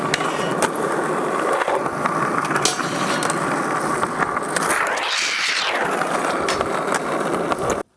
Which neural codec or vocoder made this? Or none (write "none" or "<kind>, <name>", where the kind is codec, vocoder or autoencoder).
none